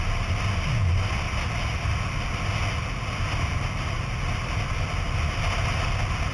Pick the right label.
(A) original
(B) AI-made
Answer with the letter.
A